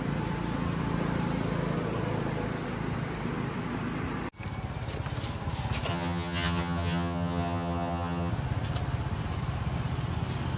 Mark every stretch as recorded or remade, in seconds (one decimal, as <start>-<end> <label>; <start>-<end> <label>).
0.0-5.9 recorded; 5.9-8.3 remade; 8.3-10.6 recorded